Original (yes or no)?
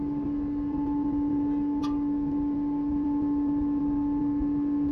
yes